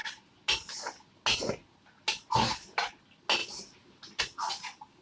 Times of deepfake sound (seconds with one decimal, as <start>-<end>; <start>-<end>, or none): none